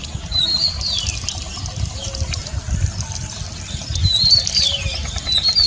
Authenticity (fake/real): real